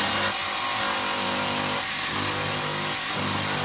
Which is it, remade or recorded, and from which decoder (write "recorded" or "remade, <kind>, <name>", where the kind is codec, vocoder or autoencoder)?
recorded